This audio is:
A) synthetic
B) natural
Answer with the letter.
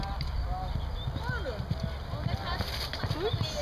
B